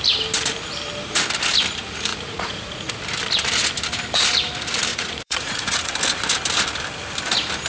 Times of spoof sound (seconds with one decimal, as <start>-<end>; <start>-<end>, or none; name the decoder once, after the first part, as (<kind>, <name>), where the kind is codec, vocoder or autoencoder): 2.1-2.9 (vocoder, Vocos); 4.9-5.9